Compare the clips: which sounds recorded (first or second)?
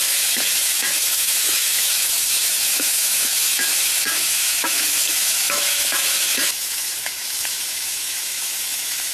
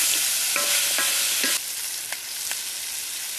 second